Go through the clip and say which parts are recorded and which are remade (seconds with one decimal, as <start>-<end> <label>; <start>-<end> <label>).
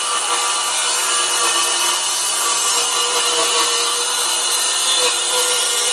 0.0-5.9 recorded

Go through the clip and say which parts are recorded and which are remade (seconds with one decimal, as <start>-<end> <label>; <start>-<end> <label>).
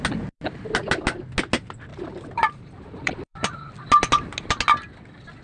0.0-1.9 recorded; 1.9-3.7 remade; 3.7-5.4 recorded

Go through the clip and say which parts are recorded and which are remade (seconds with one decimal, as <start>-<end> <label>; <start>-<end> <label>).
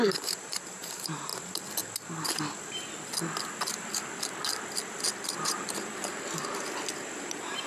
0.0-1.3 remade; 1.3-5.4 recorded; 5.4-6.4 remade; 6.4-7.2 recorded; 7.2-7.7 remade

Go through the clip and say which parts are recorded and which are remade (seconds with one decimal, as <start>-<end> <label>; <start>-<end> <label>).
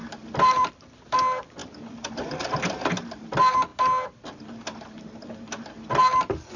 0.0-0.7 remade; 0.7-1.6 recorded; 1.6-3.2 remade; 3.2-6.6 recorded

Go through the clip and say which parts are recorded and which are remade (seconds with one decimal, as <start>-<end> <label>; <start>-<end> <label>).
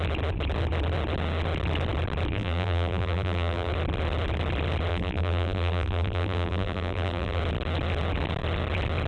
0.0-2.3 recorded; 2.3-3.7 remade; 3.7-4.9 recorded; 4.9-7.4 remade; 7.4-9.1 recorded